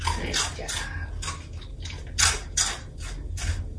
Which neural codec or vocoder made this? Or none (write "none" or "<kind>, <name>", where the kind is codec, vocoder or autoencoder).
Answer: none